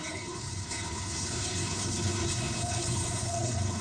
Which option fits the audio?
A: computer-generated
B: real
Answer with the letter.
A